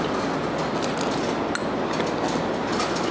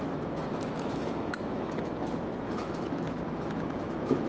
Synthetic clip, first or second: second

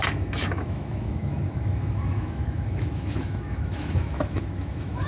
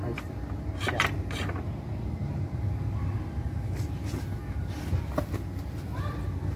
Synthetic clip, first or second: first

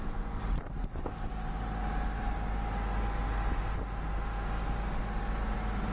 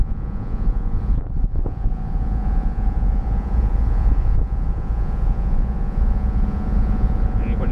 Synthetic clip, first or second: second